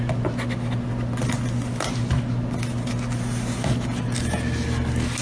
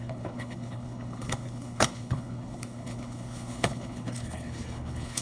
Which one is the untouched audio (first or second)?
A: first